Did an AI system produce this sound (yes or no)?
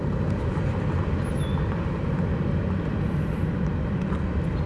no